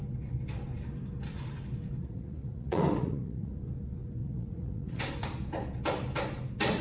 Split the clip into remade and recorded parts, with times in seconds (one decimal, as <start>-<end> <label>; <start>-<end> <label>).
0.0-2.0 recorded; 2.0-3.5 remade; 3.5-4.2 recorded; 4.2-5.0 remade; 5.0-6.8 recorded